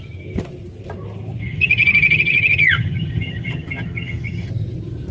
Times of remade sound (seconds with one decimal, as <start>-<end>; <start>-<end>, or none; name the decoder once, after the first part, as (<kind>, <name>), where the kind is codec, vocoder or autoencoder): 1.4-4.5 (vocoder, HiFi-GAN)